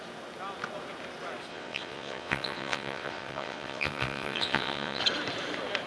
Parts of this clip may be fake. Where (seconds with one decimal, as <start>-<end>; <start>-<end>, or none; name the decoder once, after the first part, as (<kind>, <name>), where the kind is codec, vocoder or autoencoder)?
1.5-5.0 (vocoder, WaveNeXt)